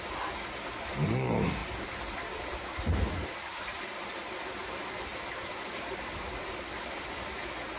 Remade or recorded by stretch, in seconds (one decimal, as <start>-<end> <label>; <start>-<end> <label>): 0.0-7.8 recorded